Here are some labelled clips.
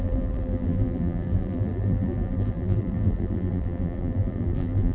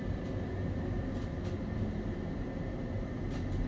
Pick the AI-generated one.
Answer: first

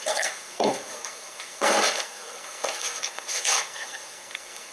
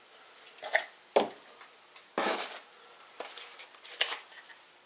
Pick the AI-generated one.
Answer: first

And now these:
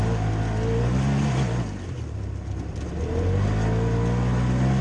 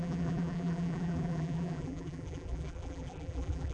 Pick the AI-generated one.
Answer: second